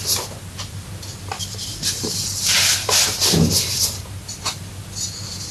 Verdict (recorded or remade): recorded